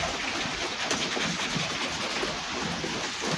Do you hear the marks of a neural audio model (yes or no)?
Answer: no